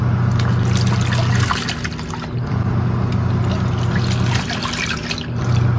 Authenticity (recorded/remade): recorded